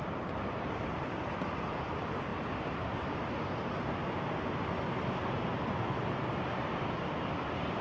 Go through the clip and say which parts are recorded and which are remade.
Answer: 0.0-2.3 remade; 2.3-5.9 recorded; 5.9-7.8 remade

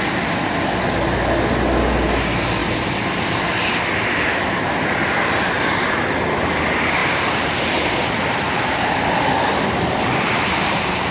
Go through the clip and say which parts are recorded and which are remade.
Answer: 0.0-2.6 recorded; 2.6-4.5 remade; 4.5-7.0 recorded; 7.0-10.2 remade; 10.2-11.1 recorded

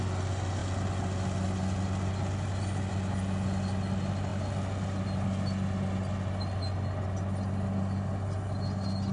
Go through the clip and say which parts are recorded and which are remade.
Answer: 0.0-9.1 recorded

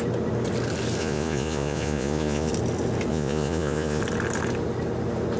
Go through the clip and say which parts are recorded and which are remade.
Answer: 0.0-1.0 recorded; 1.0-2.5 remade; 2.5-3.1 recorded; 3.1-4.0 remade; 4.0-5.4 recorded

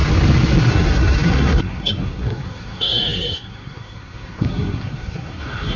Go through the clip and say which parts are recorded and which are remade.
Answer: 0.0-0.7 recorded; 0.7-5.8 remade

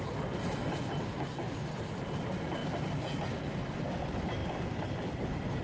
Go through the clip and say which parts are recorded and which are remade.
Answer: 0.0-5.6 recorded

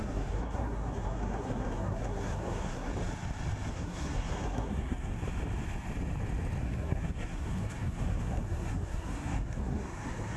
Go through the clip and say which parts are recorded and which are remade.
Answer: 0.0-2.9 remade; 2.9-3.7 recorded; 3.7-5.1 remade; 5.1-6.6 recorded; 6.6-10.4 remade